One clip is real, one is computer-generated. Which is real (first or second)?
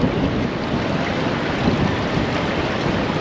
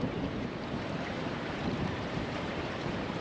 first